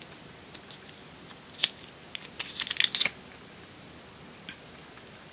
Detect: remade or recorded recorded